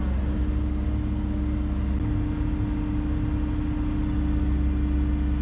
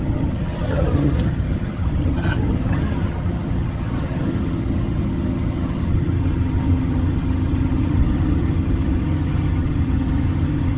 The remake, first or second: second